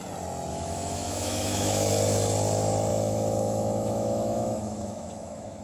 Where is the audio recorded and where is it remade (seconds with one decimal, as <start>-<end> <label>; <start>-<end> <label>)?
0.0-0.5 recorded; 0.5-1.9 remade; 1.9-2.9 recorded; 2.9-5.6 remade

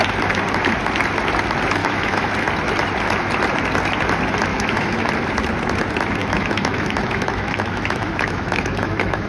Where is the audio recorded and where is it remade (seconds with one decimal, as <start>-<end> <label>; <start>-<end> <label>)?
0.0-1.8 recorded; 1.8-2.3 remade; 2.3-4.5 recorded; 4.5-5.1 remade; 5.1-6.2 recorded; 6.2-9.3 remade

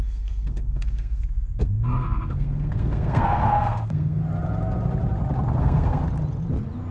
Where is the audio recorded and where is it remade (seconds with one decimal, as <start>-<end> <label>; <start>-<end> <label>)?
0.0-4.2 remade; 4.2-5.6 recorded; 5.6-6.0 remade; 6.0-6.9 recorded

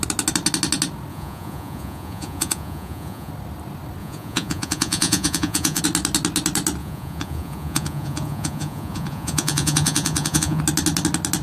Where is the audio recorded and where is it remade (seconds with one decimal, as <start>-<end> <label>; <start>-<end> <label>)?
0.0-1.1 recorded; 1.1-3.3 remade; 3.3-4.0 recorded; 4.0-5.8 remade; 5.8-6.8 recorded; 6.8-10.6 remade; 10.6-11.4 recorded

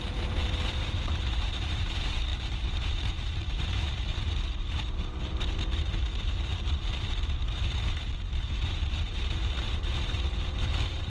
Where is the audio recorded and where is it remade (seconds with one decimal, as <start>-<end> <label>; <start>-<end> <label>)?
0.0-11.1 remade

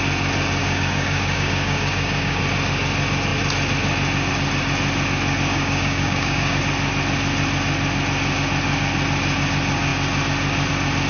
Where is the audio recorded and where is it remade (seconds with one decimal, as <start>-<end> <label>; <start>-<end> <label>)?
0.0-0.6 recorded; 0.6-2.4 remade; 2.4-5.5 recorded; 5.5-6.6 remade; 6.6-11.1 recorded

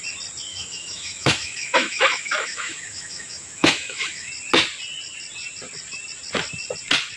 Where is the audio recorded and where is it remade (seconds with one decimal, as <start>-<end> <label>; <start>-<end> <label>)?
0.0-0.5 recorded; 0.5-4.3 remade; 4.3-7.2 recorded